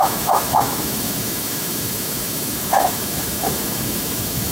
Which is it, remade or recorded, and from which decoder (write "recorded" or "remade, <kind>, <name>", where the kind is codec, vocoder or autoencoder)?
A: remade, autoencoder, DAC-VAE